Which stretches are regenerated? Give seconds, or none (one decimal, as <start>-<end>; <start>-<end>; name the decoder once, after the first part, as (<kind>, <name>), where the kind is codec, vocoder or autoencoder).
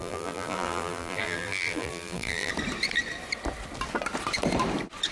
0.0-2.5 (vocoder, BigVGAN v2)